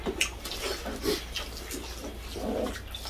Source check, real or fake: real